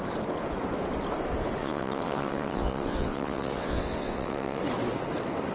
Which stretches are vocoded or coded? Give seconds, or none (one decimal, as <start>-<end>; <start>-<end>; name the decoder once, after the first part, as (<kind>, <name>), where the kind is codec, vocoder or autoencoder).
1.6-4.6 (vocoder, WaveNeXt)

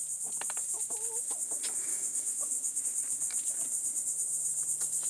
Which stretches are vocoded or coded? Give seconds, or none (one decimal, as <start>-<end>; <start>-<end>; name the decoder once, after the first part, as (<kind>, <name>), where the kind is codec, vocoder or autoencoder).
1.9-2.8 (autoencoder, DAC-VAE)